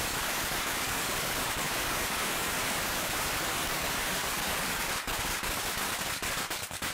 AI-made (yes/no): yes